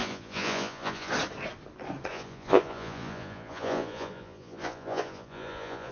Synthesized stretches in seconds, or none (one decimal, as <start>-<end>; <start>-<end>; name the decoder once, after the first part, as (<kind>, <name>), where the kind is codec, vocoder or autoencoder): 0.0-1.1 (vocoder, Vocos); 2.1-5.9